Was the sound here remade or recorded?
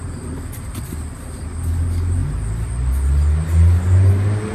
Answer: recorded